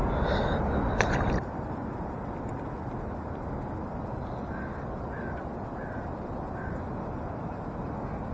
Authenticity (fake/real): real